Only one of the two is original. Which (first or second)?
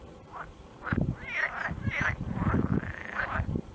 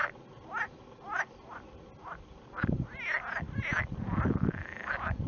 second